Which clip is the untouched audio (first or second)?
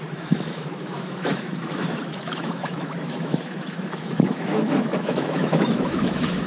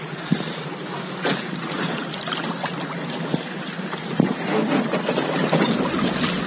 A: second